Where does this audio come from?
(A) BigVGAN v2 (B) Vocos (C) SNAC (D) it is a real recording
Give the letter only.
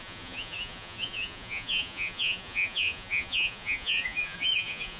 B